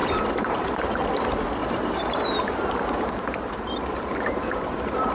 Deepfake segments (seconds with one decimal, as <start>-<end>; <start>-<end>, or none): 0.0-1.1; 1.6-5.1